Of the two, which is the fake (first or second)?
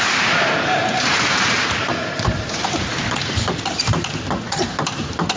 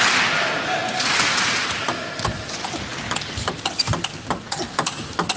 first